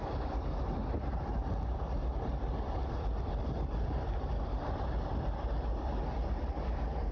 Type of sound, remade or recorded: recorded